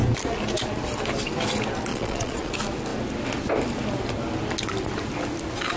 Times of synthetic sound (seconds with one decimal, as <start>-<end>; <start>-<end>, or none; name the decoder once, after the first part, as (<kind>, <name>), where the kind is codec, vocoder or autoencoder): 1.9-2.5 (vocoder, Vocos)